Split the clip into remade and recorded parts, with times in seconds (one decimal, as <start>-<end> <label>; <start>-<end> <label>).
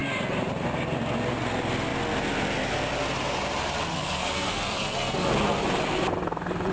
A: 0.0-3.9 recorded; 3.9-5.3 remade; 5.3-6.7 recorded